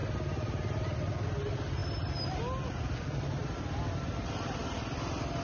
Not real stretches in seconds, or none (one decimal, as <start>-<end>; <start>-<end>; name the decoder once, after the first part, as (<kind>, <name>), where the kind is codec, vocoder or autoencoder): none